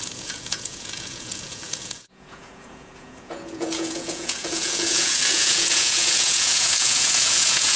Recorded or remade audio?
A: remade